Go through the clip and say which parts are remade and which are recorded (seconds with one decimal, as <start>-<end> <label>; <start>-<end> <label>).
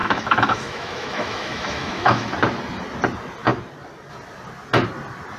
0.0-2.3 remade; 2.3-5.4 recorded